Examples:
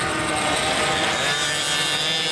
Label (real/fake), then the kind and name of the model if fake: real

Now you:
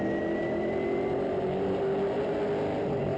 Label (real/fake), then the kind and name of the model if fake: real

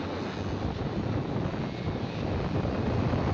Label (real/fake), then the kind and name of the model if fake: real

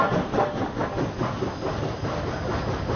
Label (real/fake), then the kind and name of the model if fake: real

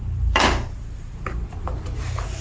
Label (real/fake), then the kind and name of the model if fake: real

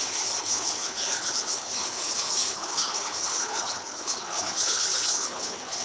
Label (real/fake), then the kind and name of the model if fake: fake, codec, HILCodec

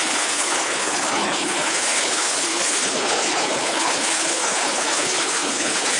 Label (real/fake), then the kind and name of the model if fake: fake, codec, HILCodec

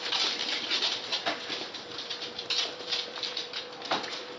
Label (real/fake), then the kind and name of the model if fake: real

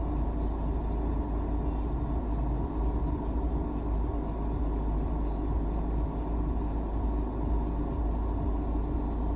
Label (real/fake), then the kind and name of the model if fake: real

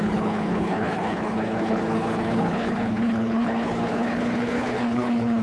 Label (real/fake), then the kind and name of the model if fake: fake, codec, HILCodec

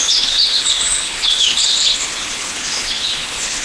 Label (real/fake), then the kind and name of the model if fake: fake, codec, HILCodec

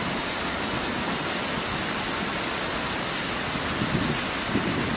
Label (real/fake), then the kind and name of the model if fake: real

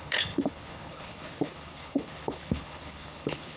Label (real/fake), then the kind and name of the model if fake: fake, codec, HILCodec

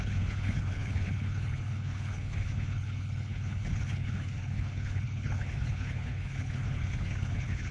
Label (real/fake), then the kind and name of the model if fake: fake, codec, HILCodec